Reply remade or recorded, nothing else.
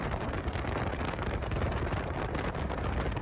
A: recorded